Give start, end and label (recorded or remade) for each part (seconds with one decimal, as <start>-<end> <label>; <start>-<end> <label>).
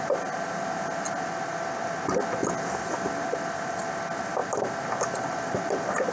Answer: 0.0-6.1 recorded